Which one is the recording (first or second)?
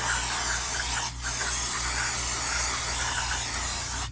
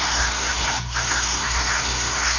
first